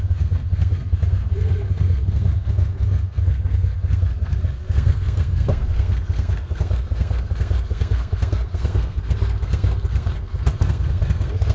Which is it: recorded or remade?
remade